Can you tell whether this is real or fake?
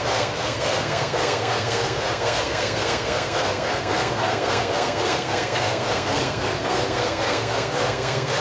fake